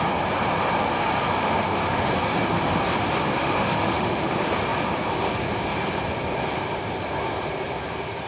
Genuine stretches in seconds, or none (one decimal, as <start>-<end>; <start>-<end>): 0.0-1.4; 2.1-3.4; 4.3-8.3